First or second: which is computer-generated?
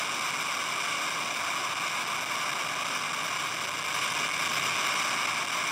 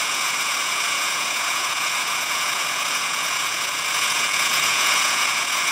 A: second